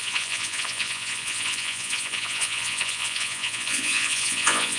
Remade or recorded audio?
remade